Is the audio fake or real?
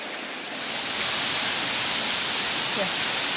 real